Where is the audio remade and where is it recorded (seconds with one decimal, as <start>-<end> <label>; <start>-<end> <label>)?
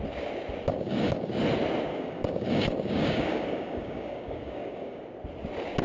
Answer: 0.0-0.7 recorded; 0.7-1.4 remade; 1.4-1.9 recorded; 1.9-5.0 remade; 5.0-5.8 recorded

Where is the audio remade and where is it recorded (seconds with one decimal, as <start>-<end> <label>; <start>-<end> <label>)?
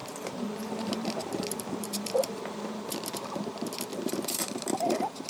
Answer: 0.0-2.7 remade; 2.7-3.9 recorded; 3.9-4.7 remade; 4.7-5.3 recorded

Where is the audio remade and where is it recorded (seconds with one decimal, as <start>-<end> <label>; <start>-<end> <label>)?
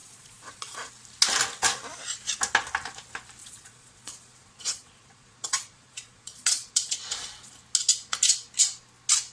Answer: 0.0-0.9 remade; 0.9-3.4 recorded; 3.4-7.5 remade; 7.5-9.3 recorded